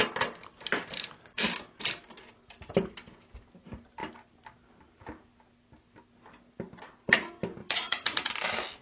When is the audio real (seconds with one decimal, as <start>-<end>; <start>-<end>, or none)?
0.0-7.6; 8.3-8.8